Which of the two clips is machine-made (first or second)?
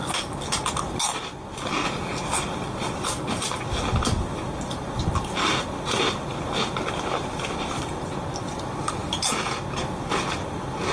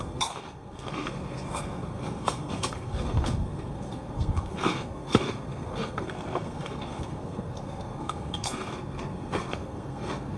second